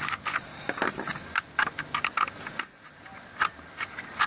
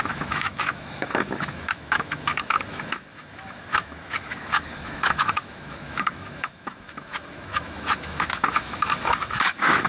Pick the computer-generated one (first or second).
second